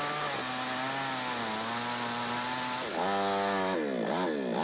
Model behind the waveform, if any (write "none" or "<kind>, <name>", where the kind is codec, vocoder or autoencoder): none